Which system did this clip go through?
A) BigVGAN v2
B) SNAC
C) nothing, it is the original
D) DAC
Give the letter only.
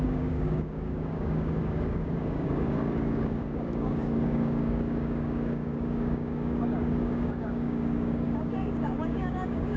D